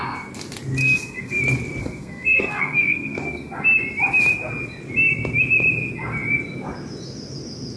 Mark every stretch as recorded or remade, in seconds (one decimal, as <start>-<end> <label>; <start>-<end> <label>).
0.0-0.8 recorded; 0.8-1.4 remade; 1.4-1.8 recorded; 1.8-3.6 remade; 3.6-7.8 recorded